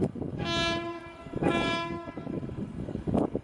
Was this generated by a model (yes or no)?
yes